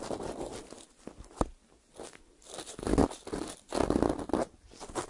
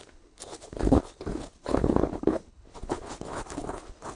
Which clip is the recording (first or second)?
first